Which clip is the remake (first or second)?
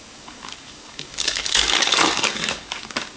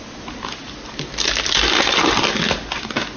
first